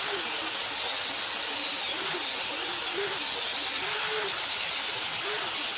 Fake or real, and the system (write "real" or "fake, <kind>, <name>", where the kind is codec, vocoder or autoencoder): real